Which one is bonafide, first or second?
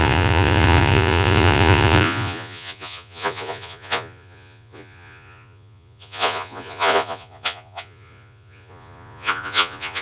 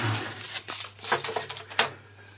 second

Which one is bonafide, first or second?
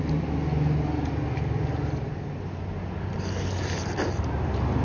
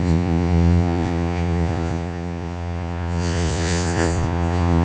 first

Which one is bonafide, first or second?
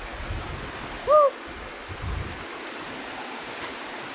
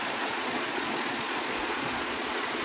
first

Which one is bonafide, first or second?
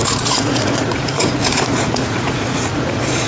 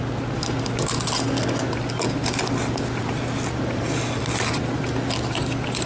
second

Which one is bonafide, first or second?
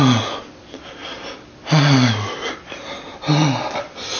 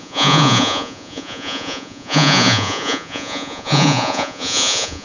first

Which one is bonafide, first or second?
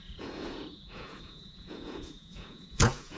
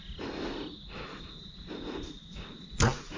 second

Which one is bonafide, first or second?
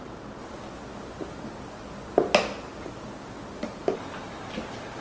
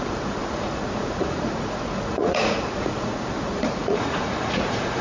first